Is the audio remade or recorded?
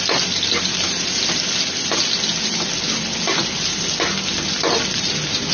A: recorded